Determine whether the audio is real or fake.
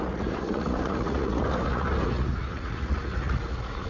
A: fake